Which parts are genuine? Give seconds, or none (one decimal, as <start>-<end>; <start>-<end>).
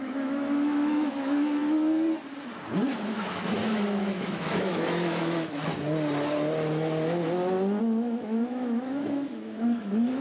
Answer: 1.6-3.0; 5.7-7.8